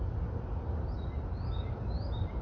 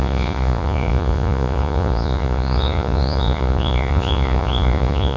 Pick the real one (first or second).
first